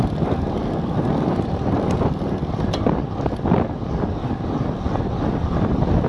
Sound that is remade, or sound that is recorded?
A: recorded